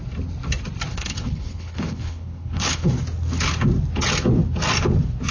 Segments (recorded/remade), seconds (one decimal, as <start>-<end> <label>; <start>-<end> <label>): 0.0-0.9 recorded; 0.9-2.9 remade; 2.9-5.3 recorded